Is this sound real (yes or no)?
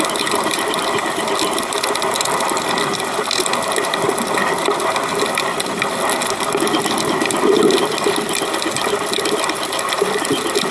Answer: yes